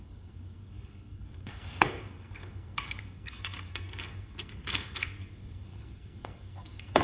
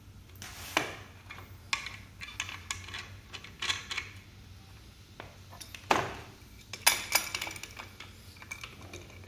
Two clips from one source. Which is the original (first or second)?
second